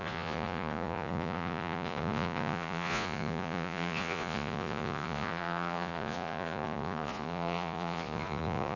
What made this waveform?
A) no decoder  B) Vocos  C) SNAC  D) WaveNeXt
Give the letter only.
B